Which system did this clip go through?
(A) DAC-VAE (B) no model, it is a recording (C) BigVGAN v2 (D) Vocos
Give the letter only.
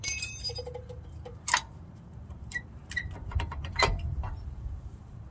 C